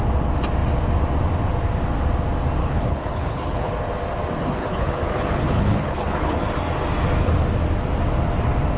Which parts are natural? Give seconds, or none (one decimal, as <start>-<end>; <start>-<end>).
0.0-2.6; 3.7-4.4; 6.4-8.8